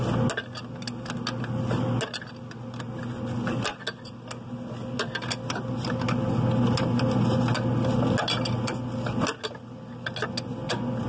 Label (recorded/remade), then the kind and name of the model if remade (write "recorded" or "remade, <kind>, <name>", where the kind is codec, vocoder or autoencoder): recorded